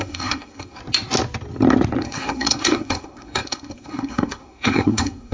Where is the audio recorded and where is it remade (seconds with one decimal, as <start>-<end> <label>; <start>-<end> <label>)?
0.0-0.8 remade; 0.8-2.0 recorded; 2.0-5.3 remade